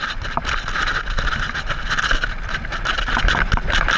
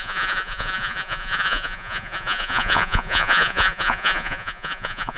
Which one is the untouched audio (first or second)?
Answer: first